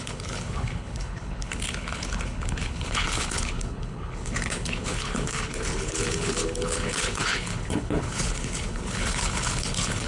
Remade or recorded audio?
remade